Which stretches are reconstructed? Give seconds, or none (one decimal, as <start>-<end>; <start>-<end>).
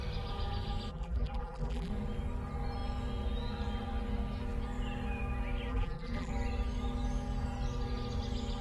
0.9-1.9; 5.7-6.3